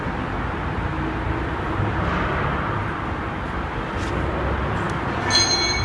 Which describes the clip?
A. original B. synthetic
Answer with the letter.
A